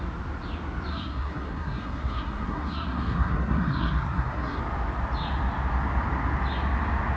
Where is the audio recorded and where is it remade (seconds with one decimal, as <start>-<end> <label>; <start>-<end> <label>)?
0.0-0.9 recorded; 0.9-4.6 remade; 4.6-7.2 recorded